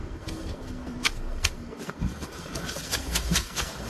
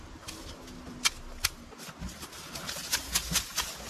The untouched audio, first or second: second